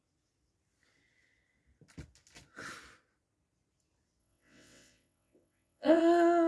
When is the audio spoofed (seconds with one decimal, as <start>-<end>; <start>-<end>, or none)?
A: 4.2-6.0